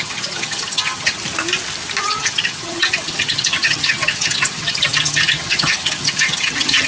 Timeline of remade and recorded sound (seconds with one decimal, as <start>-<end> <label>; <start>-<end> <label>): 0.0-1.2 remade; 1.2-2.0 recorded; 2.0-6.9 remade